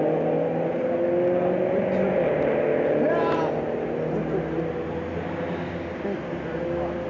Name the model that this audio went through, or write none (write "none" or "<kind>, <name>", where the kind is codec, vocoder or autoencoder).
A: none